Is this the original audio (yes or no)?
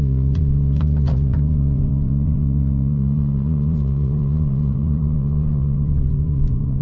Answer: no